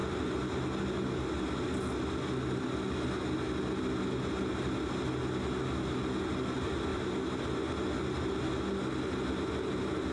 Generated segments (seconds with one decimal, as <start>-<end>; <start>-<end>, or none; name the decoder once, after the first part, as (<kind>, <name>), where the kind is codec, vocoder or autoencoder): none